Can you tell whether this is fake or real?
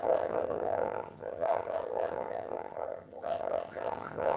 fake